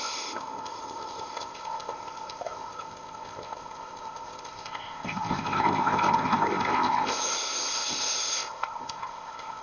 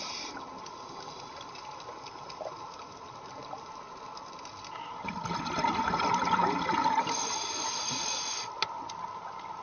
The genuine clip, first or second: second